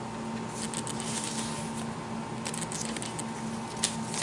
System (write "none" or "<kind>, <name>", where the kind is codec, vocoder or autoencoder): none